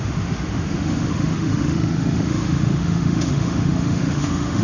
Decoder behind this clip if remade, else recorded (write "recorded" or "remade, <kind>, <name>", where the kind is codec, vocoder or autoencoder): remade, autoencoder, DAC-VAE